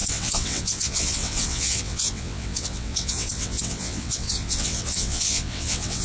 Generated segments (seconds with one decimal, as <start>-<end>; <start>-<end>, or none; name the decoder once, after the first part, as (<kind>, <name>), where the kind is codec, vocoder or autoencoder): 0.0-6.0 (vocoder, WaveNeXt)